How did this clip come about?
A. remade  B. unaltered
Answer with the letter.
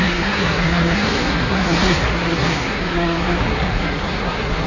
A